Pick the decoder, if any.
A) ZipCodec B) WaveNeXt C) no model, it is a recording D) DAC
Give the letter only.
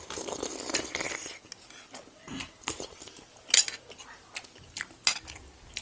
C